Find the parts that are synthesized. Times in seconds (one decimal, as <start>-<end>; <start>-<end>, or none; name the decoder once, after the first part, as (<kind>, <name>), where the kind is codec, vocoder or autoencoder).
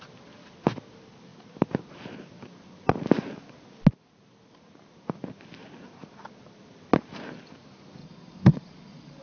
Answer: 8.0-9.2 (vocoder, Vocos)